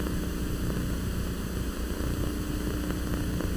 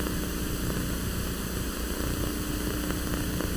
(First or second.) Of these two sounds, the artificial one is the second